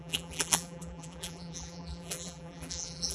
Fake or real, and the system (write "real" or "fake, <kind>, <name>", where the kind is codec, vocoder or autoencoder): fake, vocoder, BigVGAN v2